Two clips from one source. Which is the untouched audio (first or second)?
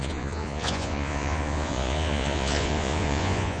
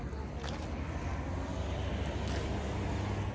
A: second